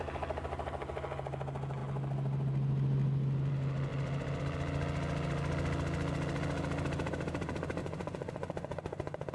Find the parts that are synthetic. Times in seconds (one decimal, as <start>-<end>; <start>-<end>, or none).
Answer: 7.8-9.3